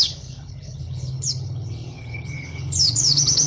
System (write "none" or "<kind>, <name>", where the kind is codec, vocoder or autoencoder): codec, HILCodec